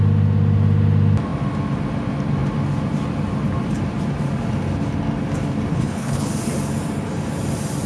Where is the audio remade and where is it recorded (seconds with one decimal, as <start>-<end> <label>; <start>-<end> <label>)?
0.0-5.7 recorded; 5.7-6.3 remade; 6.3-7.9 recorded